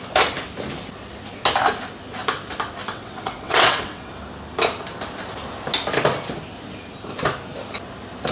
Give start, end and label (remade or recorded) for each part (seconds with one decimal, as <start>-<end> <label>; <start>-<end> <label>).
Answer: 0.0-2.9 recorded; 2.9-4.1 remade; 4.1-8.3 recorded